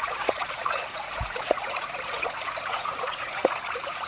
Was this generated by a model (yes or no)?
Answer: yes